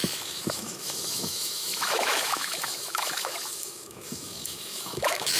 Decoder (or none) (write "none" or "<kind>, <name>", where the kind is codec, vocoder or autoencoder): autoencoder, DAC-VAE